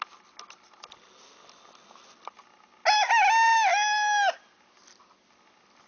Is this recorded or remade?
recorded